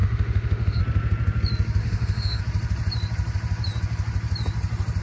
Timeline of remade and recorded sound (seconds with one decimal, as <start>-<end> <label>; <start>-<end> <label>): 0.0-0.8 remade; 0.8-1.8 recorded; 1.8-2.4 remade; 2.4-5.0 recorded